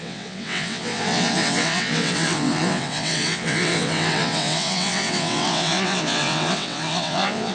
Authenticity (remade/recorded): remade